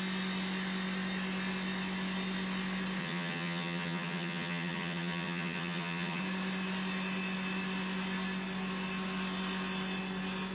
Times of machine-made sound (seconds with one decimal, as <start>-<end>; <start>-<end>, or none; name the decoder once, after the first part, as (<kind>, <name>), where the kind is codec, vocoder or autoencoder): 3.0-6.2 (vocoder, HiFi-GAN)